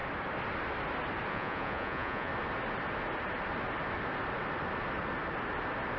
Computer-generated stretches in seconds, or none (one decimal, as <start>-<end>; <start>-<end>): 1.3-2.3